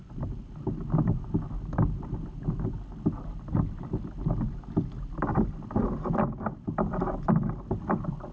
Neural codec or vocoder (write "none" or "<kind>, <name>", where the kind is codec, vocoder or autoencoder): none